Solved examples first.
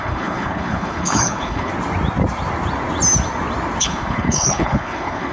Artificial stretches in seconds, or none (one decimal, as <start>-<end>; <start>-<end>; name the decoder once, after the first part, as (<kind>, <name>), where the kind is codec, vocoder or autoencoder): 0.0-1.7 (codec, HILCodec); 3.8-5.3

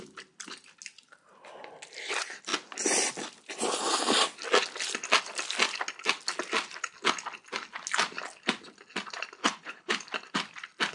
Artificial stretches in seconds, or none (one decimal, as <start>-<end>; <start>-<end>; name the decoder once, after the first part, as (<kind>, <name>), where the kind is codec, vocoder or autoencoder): 9.4-10.0 (codec, HILCodec)

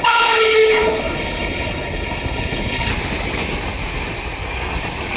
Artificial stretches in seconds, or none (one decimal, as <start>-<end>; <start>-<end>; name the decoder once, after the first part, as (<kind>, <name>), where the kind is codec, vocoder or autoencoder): 0.0-2.9 (codec, HILCodec)